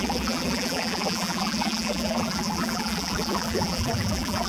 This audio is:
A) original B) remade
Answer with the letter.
B